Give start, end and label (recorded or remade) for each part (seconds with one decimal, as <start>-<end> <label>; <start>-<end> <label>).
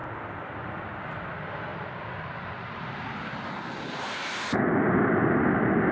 0.0-5.9 recorded